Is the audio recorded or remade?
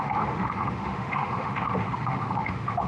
remade